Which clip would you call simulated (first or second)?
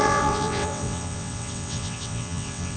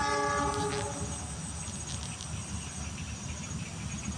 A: first